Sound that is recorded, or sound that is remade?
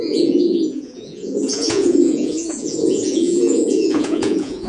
remade